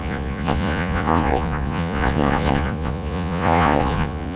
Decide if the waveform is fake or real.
fake